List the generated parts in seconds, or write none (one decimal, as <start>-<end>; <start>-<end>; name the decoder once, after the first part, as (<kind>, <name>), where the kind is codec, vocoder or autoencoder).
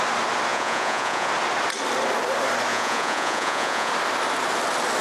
0.5-1.3 (vocoder, Vocos); 2.7-3.9